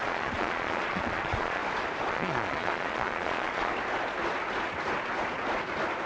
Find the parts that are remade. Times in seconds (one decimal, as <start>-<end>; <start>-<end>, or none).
0.0-1.6; 2.1-3.7

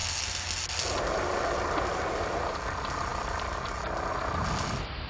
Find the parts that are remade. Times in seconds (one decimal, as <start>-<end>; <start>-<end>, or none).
none

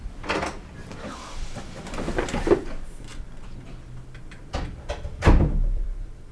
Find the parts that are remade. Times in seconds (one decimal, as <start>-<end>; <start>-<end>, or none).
0.0-6.3

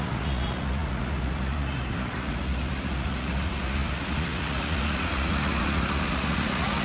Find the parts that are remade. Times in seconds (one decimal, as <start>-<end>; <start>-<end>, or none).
0.0-6.8

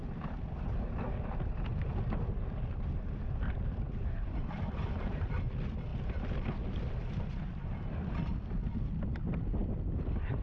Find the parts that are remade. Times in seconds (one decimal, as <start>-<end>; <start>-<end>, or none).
1.7-5.3; 5.9-6.5

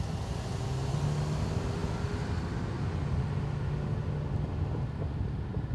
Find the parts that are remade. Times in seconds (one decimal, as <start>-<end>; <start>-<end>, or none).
none